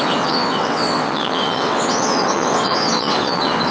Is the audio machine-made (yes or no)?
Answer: yes